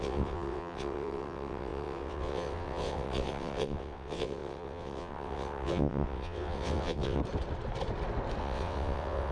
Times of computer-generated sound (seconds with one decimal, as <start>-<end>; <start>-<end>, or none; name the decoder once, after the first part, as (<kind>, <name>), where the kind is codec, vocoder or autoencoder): 0.0-7.2 (vocoder, WaveNeXt); 8.4-9.3